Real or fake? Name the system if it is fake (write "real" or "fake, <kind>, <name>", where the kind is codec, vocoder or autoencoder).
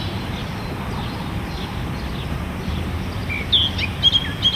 real